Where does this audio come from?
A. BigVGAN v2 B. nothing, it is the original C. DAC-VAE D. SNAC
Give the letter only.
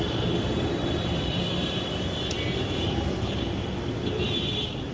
A